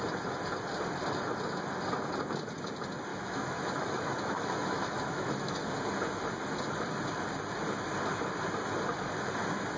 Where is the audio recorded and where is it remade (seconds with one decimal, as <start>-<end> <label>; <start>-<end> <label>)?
0.0-3.1 recorded; 3.1-5.7 remade; 5.7-9.8 recorded